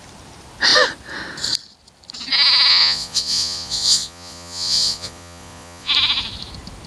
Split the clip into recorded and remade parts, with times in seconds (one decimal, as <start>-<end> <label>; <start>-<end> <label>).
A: 0.0-2.7 recorded; 2.7-5.9 remade; 5.9-6.9 recorded